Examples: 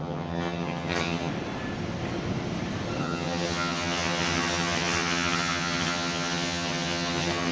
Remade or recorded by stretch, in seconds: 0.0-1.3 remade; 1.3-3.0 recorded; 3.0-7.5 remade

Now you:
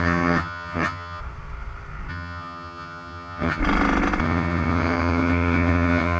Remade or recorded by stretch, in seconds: 0.0-1.2 remade; 1.2-2.1 recorded; 2.1-3.6 remade; 3.6-4.2 recorded; 4.2-6.2 remade

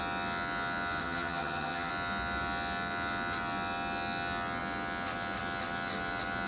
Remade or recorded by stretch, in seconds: 0.0-1.0 recorded; 1.0-1.9 remade; 1.9-6.5 recorded

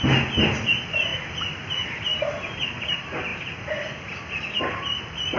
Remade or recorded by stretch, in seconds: 0.0-5.4 recorded

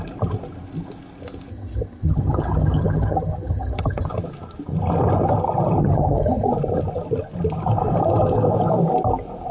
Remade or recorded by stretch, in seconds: 0.0-1.5 recorded; 1.5-4.1 remade; 4.1-5.8 recorded; 5.8-6.5 remade; 6.5-9.5 recorded

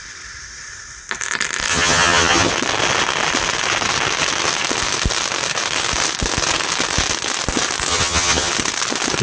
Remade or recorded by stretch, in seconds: 0.0-1.7 recorded; 1.7-2.5 remade; 2.5-7.9 recorded; 7.9-8.5 remade; 8.5-9.2 recorded

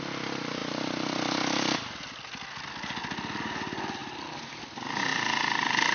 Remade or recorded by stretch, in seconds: 0.0-5.9 recorded